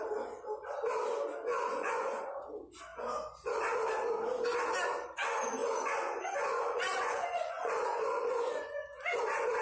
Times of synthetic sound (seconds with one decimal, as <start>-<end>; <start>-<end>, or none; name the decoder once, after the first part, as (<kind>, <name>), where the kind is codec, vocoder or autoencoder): 1.5-2.5 (vocoder, Vocos); 5.6-9.2